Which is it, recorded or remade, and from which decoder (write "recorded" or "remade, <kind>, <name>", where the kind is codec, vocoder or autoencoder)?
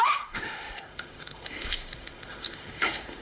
remade, autoencoder, DAC-VAE